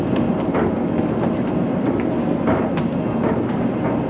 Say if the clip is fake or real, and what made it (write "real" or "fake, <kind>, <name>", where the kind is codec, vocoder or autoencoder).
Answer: real